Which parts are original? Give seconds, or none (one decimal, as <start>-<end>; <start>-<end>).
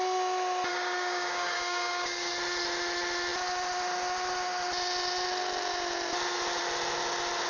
0.0-0.7; 2.3-7.5